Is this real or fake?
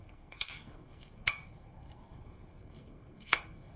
fake